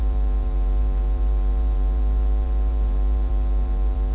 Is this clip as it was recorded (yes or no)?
no